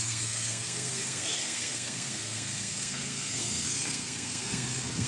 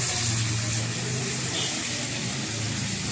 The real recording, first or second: second